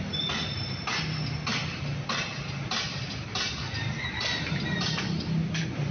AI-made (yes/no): no